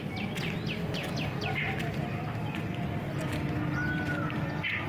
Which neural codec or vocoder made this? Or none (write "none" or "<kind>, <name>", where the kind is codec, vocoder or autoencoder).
none